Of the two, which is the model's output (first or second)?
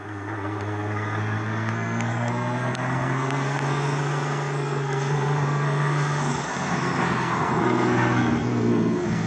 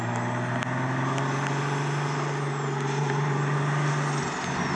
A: first